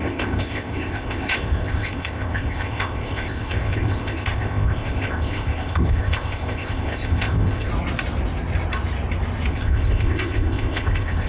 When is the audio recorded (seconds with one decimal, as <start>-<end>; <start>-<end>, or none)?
7.7-9.5